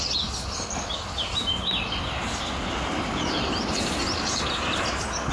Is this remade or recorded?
recorded